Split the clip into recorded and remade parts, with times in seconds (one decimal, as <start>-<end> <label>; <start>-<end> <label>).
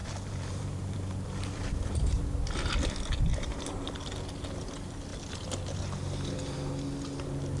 0.0-2.2 remade; 2.2-3.3 recorded; 3.3-3.9 remade; 3.9-7.6 recorded